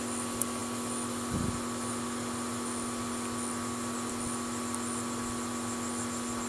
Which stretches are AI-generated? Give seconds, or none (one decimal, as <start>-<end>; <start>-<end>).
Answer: none